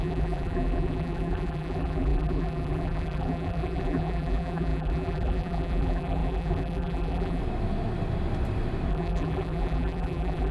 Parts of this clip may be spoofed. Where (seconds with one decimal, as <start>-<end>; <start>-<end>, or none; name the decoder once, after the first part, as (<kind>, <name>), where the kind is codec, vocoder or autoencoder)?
0.0-7.4 (vocoder, BigVGAN v2); 8.9-10.5